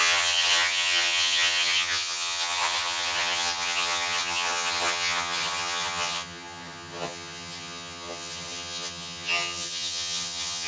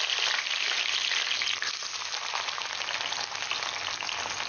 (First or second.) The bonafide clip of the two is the second